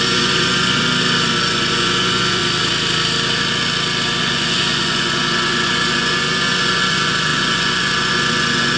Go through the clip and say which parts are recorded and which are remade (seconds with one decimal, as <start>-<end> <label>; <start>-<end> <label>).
0.0-0.8 remade; 0.8-1.4 recorded; 1.4-2.4 remade; 2.4-4.2 recorded; 4.2-8.8 remade